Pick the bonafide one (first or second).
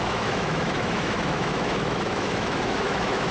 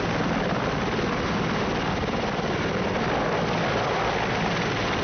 second